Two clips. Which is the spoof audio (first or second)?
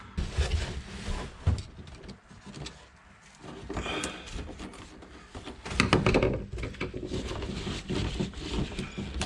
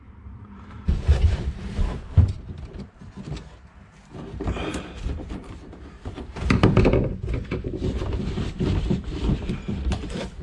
second